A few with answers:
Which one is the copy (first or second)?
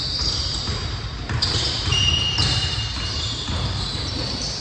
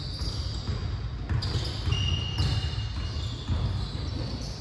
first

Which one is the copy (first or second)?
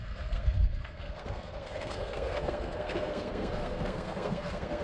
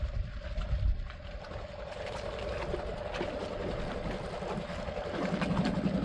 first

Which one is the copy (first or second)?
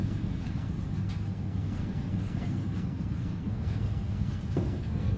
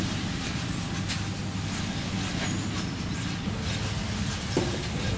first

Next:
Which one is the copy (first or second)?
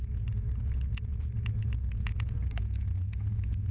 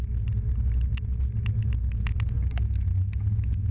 first